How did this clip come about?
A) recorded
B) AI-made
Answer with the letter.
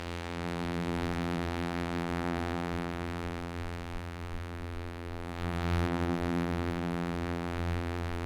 B